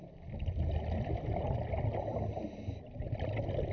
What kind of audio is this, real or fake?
real